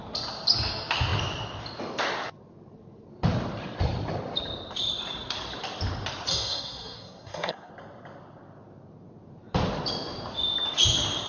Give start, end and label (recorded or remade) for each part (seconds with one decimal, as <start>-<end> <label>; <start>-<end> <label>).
0.0-6.3 recorded; 6.3-7.7 remade; 7.7-11.3 recorded